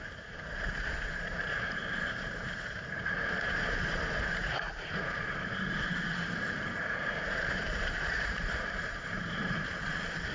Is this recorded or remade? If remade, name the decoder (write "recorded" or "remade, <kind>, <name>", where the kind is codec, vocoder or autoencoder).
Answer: remade, vocoder, BigVGAN v2